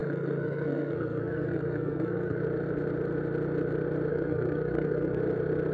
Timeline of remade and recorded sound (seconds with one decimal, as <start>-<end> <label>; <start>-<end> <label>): 0.0-2.4 remade; 2.4-4.1 recorded; 4.1-5.2 remade; 5.2-5.7 recorded